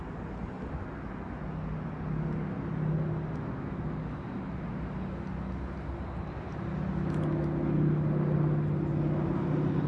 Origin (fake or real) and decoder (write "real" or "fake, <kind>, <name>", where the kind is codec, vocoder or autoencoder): real